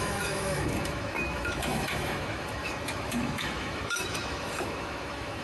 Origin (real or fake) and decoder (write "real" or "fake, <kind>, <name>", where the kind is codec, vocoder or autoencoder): fake, autoencoder, DAC-VAE